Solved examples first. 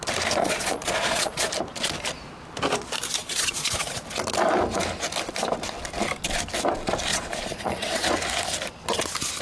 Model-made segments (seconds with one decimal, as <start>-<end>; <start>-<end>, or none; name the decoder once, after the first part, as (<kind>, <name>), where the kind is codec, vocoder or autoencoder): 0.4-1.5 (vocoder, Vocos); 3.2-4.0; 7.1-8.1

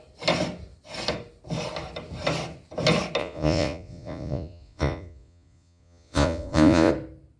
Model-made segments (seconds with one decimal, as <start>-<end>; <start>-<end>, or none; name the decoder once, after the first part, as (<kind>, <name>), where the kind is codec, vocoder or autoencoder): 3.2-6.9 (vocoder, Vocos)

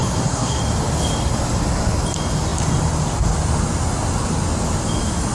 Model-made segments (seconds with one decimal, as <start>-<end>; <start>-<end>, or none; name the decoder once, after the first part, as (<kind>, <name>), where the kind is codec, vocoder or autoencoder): 0.0-0.6 (codec, SNAC)